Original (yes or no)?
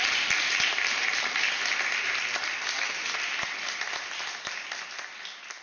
yes